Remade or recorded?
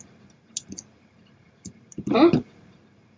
remade